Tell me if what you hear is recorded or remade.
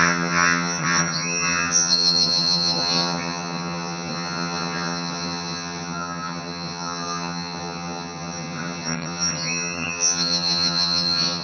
remade